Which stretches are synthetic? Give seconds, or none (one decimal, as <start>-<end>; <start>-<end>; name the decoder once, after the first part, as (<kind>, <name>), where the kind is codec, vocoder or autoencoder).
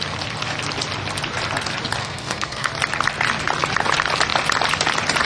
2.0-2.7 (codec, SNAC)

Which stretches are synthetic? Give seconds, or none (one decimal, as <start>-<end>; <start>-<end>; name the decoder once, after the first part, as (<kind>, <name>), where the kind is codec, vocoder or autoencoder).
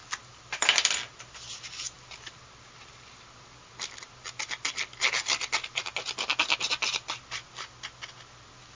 none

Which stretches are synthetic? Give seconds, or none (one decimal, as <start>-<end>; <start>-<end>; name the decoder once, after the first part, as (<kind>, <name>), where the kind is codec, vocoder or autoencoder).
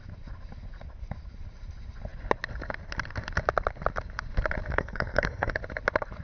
4.7-5.6 (codec, SNAC)